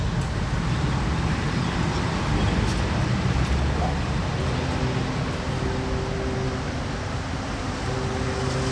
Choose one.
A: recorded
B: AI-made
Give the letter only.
A